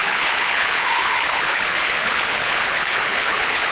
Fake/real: fake